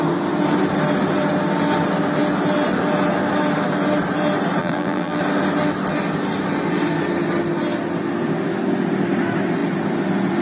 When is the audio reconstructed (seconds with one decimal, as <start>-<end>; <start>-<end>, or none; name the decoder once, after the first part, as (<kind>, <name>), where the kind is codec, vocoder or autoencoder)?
4.6-5.2 (vocoder, BigVGAN v2)